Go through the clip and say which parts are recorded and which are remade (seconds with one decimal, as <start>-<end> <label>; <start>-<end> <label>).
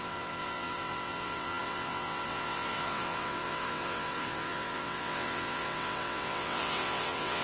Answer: 0.0-7.4 remade